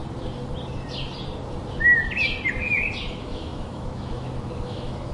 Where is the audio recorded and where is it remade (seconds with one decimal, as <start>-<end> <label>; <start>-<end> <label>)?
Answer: 0.0-3.1 recorded; 3.1-5.1 remade

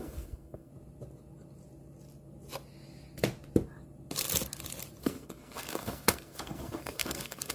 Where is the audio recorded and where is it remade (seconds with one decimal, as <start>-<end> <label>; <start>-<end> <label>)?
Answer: 0.0-0.7 remade; 0.7-5.0 recorded; 5.0-7.5 remade